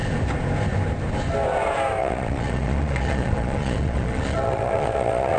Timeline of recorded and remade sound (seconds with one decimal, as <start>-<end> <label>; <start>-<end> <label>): 0.0-2.0 recorded; 2.0-5.4 remade